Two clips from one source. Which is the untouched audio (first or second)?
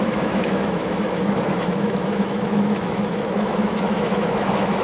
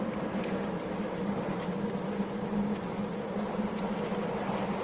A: second